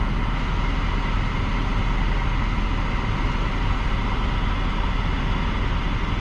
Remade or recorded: recorded